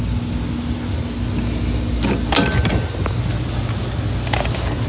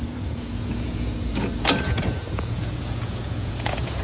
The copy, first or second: second